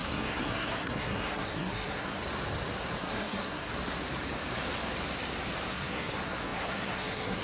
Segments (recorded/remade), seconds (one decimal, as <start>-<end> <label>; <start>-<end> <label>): 0.0-2.2 remade; 2.2-3.0 recorded; 3.0-3.7 remade; 3.7-5.7 recorded; 5.7-7.4 remade